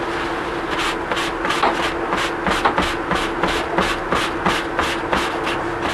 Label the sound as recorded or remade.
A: recorded